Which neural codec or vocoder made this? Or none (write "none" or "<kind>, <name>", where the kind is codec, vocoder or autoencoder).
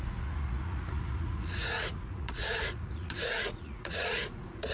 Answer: vocoder, Vocos